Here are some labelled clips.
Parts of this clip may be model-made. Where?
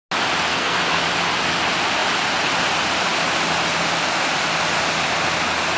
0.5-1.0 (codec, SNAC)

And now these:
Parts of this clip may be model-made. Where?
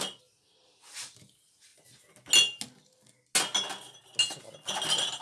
none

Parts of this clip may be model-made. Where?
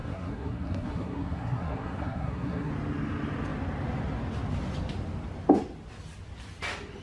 0.0-2.7 (codec, SNAC)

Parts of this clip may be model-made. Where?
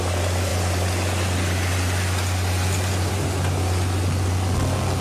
none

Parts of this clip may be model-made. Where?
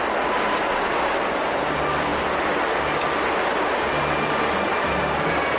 none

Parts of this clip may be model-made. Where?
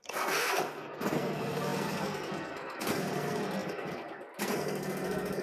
0.0-5.4 (codec, SNAC)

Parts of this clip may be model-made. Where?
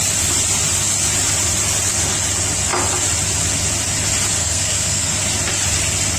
4.4-5.1 (codec, SNAC)